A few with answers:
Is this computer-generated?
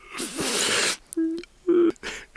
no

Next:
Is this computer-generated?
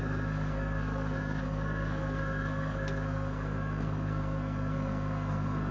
yes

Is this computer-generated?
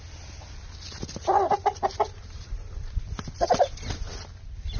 no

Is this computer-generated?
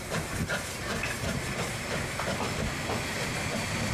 no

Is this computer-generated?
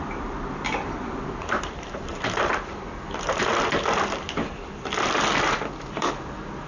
yes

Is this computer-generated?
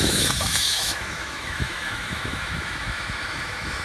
yes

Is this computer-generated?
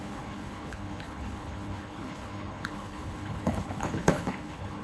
yes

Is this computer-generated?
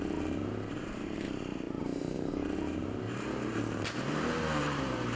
yes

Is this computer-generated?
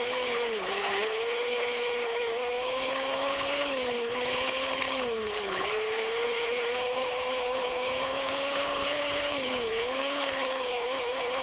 yes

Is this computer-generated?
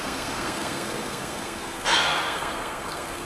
yes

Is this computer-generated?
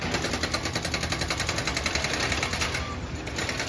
no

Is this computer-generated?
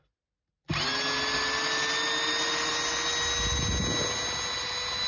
no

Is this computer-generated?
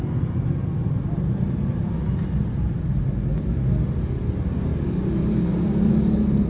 no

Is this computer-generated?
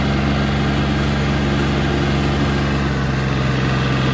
no